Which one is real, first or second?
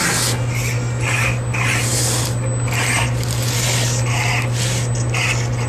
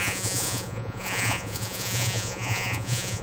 first